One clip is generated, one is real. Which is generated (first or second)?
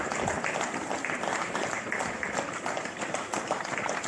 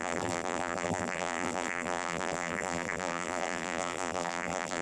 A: second